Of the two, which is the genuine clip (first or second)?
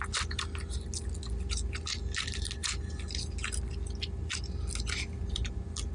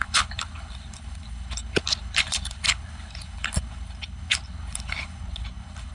first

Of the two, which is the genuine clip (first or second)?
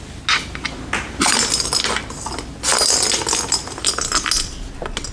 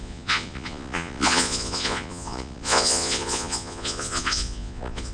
first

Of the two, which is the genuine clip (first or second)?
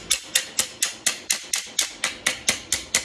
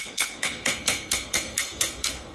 first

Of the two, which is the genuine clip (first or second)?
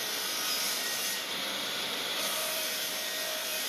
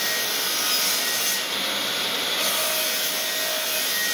second